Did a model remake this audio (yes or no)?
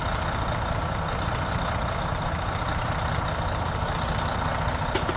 no